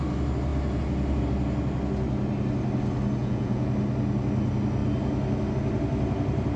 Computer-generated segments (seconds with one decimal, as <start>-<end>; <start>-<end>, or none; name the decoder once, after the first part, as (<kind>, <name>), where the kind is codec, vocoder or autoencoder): 3.2-3.7 (vocoder, Vocos)